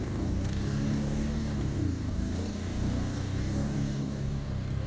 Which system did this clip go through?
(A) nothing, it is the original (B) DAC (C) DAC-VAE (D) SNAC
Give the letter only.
B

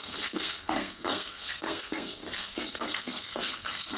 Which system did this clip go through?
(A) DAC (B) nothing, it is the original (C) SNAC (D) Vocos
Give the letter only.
C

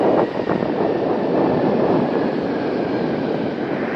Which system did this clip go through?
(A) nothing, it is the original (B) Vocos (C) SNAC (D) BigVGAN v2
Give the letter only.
A